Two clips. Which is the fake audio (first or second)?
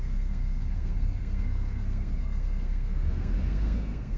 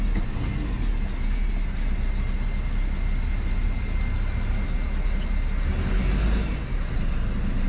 first